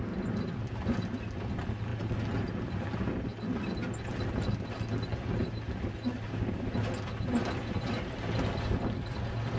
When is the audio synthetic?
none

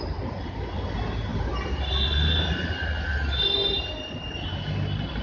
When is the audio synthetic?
none

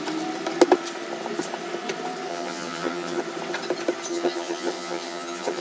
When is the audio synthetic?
2.3-3.2 (vocoder, HiFi-GAN); 4.1-5.6

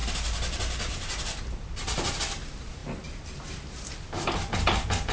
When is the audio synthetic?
none

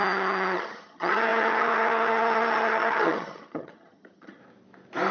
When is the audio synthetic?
0.0-4.4 (vocoder, HiFi-GAN)

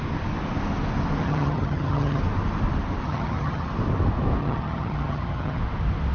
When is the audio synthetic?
1.2-2.2 (vocoder, HiFi-GAN); 3.0-3.7; 4.4-5.6